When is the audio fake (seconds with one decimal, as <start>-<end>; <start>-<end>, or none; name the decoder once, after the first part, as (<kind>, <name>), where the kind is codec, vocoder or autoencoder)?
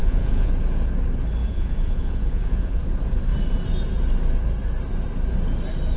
0.0-0.5 (vocoder, Vocos); 1.4-2.8